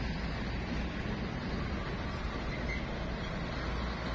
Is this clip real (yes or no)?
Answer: yes